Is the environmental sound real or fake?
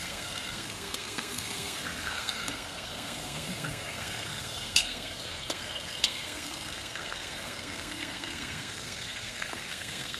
fake